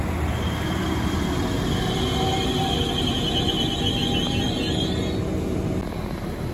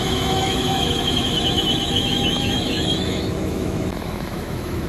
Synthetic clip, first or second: second